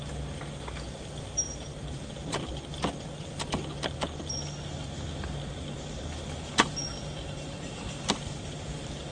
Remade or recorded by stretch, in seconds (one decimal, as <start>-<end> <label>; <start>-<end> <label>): 0.0-9.1 recorded